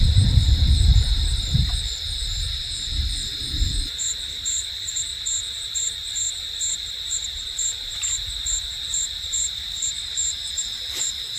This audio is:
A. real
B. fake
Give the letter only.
B